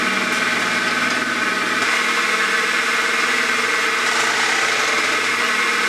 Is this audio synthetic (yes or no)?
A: no